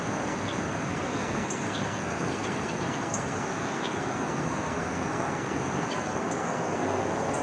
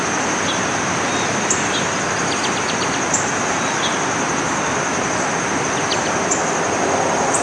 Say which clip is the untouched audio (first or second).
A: second